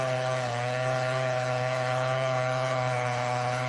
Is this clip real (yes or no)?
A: no